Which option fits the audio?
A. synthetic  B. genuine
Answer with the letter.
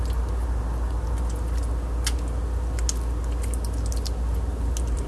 B